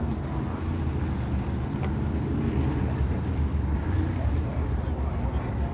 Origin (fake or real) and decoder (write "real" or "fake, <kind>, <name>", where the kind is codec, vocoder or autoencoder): real